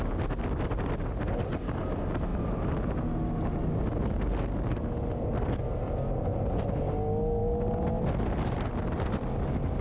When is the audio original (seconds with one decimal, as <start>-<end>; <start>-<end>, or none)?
0.0-9.8